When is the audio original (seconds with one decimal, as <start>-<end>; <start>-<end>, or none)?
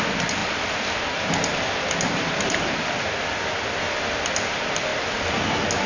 0.0-5.9